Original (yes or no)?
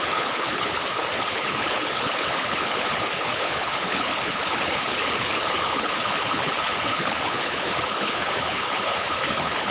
no